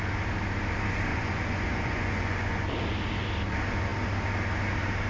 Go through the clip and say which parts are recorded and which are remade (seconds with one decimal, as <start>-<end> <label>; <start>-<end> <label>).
0.0-1.1 recorded; 1.1-2.7 remade; 2.7-5.1 recorded